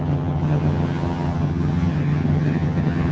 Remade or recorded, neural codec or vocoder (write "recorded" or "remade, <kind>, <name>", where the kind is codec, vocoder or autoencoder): remade, vocoder, HiFi-GAN